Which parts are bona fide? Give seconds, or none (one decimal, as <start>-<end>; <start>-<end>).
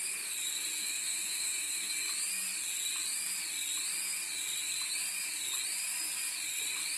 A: 0.0-0.8; 1.9-7.0